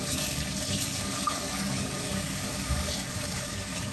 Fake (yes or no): yes